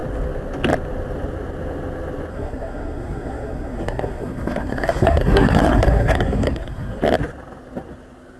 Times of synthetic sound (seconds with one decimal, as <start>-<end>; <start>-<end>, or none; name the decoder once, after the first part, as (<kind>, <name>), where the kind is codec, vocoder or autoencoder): 2.3-7.0 (codec, SNAC)